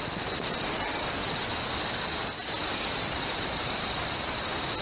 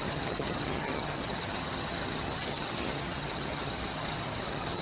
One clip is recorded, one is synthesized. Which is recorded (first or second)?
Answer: first